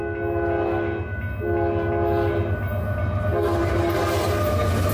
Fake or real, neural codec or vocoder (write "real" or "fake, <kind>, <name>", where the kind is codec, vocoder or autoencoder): real